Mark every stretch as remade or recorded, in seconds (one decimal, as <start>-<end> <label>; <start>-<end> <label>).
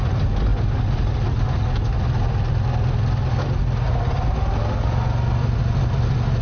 0.0-6.4 recorded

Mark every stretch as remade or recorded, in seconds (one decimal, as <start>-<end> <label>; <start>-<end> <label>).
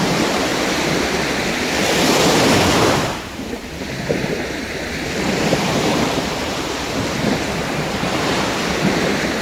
0.0-0.5 remade; 0.5-2.0 recorded; 2.0-9.4 remade